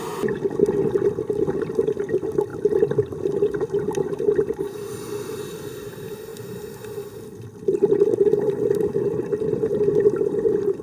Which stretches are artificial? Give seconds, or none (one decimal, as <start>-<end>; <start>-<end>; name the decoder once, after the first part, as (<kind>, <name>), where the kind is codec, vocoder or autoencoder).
none